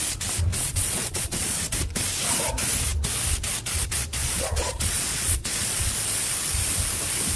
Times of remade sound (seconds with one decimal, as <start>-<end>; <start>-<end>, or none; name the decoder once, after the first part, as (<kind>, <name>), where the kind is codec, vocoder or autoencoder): 0.5-1.6 (vocoder, Vocos); 4.2-5.9